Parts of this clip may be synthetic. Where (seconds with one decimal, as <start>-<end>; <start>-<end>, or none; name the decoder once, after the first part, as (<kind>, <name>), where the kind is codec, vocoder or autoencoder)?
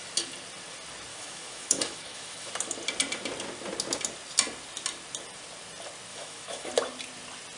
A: 1.1-2.5 (autoencoder, DAC-VAE); 6.1-6.7